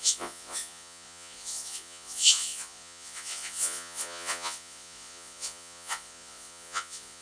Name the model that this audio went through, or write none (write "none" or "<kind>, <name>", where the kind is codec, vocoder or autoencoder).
vocoder, Vocos